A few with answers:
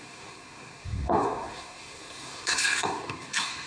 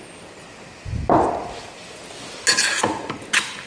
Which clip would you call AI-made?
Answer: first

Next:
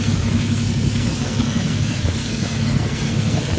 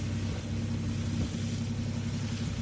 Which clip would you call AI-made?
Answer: first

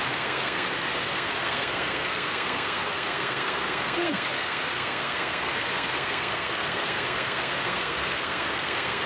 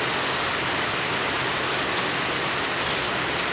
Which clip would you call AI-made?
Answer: first